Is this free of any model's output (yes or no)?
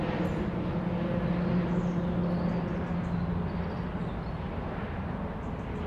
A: yes